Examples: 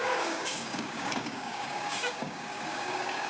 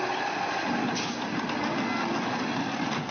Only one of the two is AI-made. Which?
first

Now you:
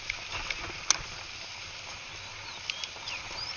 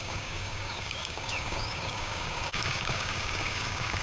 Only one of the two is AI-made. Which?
second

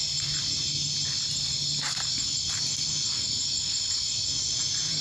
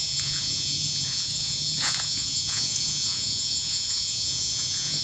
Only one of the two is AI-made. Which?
second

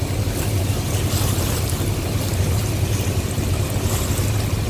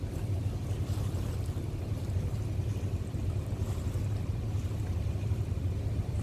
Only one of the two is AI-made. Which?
second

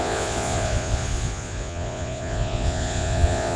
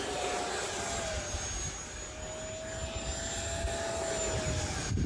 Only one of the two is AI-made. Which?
first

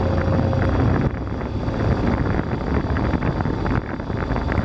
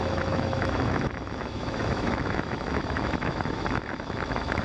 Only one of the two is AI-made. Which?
second